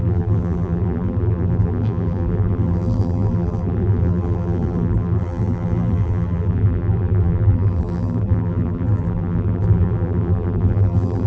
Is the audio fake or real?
fake